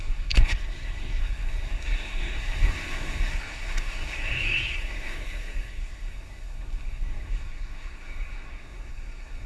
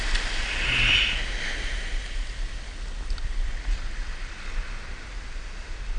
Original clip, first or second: second